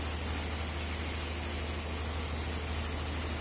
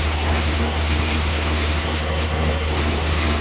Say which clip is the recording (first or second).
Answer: first